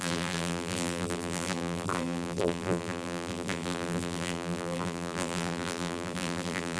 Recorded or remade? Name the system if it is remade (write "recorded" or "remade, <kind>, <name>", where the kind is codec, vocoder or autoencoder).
remade, vocoder, BigVGAN v2